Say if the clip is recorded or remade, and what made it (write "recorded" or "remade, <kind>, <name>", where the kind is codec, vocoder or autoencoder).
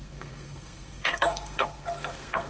remade, codec, SNAC